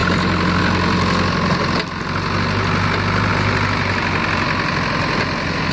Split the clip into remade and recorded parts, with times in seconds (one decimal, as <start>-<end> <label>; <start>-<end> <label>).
0.0-5.7 recorded